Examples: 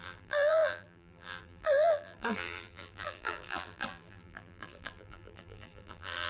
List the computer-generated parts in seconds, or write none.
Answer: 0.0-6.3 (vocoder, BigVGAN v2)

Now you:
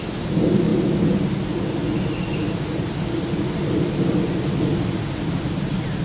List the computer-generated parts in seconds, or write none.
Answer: 2.3-6.0 (vocoder, BigVGAN v2)